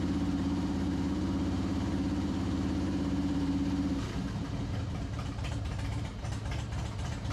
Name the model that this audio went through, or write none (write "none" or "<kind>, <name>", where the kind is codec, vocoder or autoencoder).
vocoder, BigVGAN v2